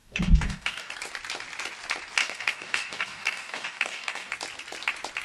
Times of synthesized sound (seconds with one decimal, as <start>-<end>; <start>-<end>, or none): 0.0-0.9; 2.2-4.3